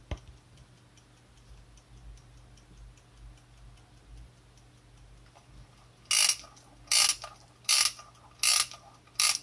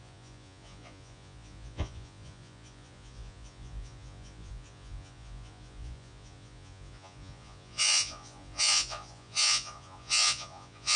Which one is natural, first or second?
first